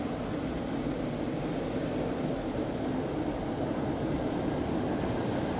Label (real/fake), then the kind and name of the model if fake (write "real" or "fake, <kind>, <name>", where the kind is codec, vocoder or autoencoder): real